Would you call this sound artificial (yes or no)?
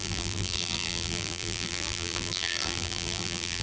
yes